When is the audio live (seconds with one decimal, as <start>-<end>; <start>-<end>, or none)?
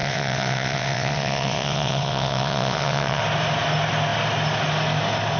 3.2-5.4